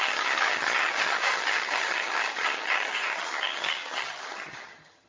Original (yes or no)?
no